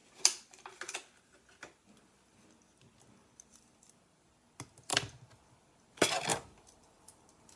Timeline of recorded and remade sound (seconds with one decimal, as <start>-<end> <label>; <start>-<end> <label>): 0.0-7.6 recorded